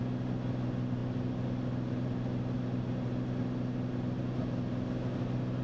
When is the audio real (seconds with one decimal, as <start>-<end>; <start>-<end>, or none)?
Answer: 0.0-5.6